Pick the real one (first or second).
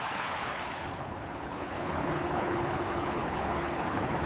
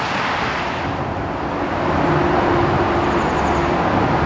second